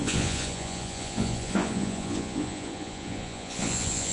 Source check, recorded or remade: remade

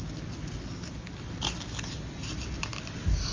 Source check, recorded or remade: recorded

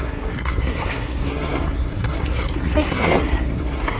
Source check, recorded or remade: remade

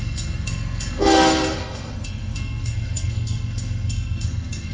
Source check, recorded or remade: remade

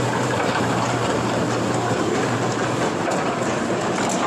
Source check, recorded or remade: remade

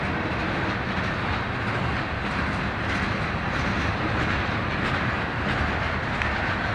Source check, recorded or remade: recorded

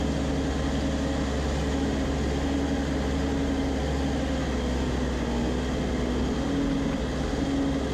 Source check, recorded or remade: recorded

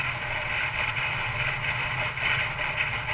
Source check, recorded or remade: recorded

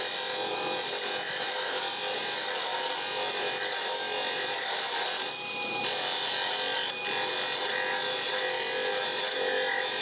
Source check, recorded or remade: recorded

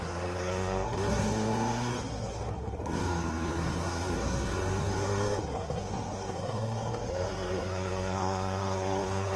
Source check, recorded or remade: remade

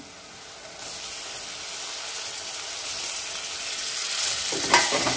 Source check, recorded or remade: recorded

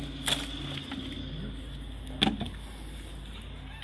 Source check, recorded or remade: recorded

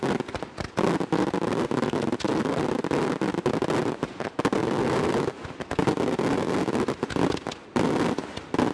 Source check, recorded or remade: recorded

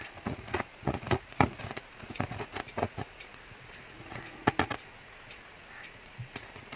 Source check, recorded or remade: remade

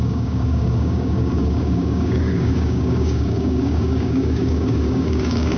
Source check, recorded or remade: remade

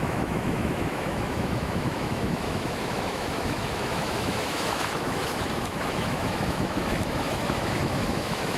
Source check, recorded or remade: remade